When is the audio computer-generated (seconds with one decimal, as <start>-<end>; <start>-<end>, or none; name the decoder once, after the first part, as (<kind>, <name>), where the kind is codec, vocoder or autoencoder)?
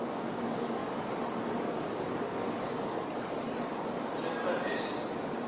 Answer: 0.0-0.8 (codec, DAC); 1.5-4.4